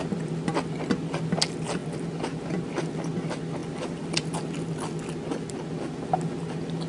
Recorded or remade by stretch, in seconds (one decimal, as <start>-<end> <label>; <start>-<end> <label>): 0.0-6.9 recorded